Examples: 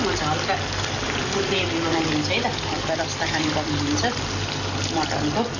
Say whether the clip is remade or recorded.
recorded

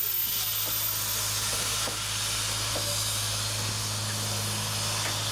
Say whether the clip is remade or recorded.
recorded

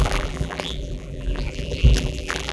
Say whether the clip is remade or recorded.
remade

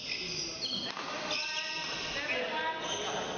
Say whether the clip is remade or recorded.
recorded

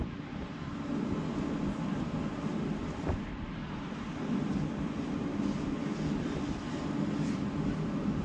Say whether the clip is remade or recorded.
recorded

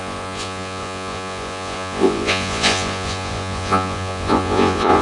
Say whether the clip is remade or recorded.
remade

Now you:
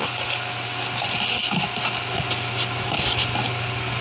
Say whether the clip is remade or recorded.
recorded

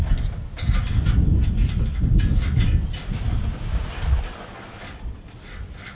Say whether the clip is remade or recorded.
recorded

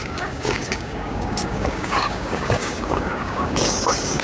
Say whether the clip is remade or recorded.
remade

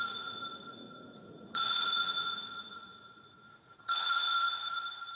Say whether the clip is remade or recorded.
remade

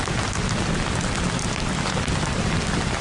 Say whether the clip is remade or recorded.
recorded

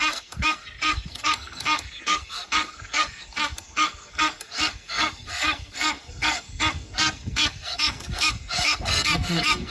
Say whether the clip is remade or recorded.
remade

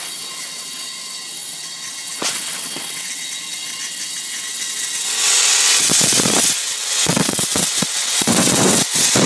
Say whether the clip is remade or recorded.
remade